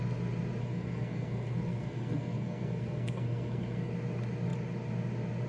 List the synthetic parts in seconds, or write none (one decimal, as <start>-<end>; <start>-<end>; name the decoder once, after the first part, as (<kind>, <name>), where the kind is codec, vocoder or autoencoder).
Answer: 0.6-3.9 (codec, SNAC)